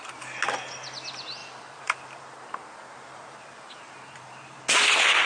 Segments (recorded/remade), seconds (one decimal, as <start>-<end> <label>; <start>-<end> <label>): 0.0-1.4 recorded; 1.4-4.6 remade; 4.6-5.3 recorded